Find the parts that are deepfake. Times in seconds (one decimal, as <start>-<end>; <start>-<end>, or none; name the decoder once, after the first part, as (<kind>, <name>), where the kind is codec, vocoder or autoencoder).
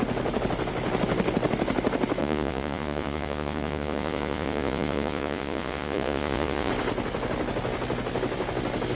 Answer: 2.2-6.7 (vocoder, Vocos)